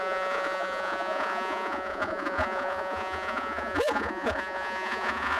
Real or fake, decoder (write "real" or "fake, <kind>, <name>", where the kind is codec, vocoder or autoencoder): fake, vocoder, Vocos